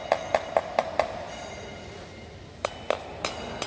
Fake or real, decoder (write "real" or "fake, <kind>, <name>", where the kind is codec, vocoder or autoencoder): real